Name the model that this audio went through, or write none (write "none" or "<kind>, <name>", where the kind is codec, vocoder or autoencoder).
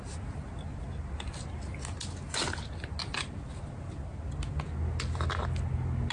none